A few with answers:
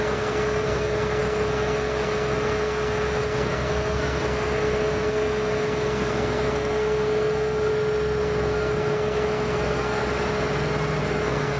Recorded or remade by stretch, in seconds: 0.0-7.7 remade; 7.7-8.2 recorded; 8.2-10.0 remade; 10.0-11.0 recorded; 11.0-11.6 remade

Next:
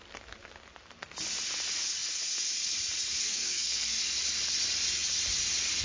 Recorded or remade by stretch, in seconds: 0.0-3.2 recorded; 3.2-4.0 remade; 4.0-5.8 recorded

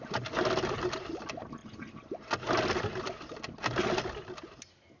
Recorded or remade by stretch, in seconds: 0.0-5.0 recorded

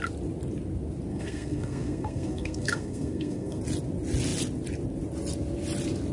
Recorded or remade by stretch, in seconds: 0.0-1.1 recorded; 1.1-3.6 remade; 3.6-6.1 recorded

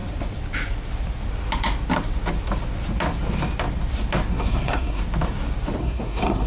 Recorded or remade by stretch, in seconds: 0.0-4.3 recorded; 4.3-5.0 remade; 5.0-5.8 recorded; 5.8-6.5 remade

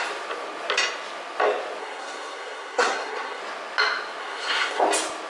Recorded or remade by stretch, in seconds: 0.0-1.8 recorded; 1.8-3.4 remade; 3.4-4.2 recorded; 4.2-4.8 remade; 4.8-5.3 recorded